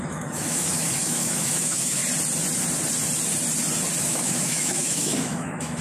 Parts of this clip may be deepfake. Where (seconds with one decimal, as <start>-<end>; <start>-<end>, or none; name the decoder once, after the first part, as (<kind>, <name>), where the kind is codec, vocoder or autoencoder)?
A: 0.0-2.0 (autoencoder, DAC-VAE); 4.0-5.8